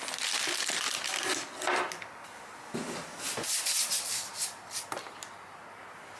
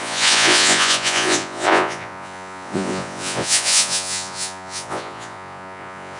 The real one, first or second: first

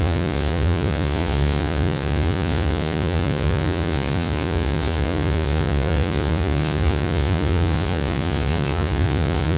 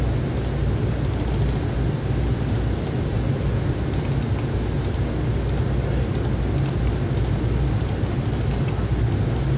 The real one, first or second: second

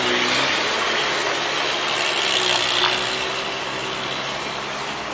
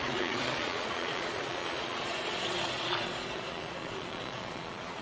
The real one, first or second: first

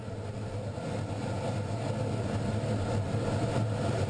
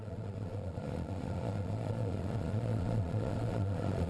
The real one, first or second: first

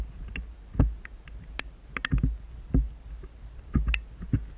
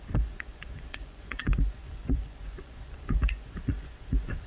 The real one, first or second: first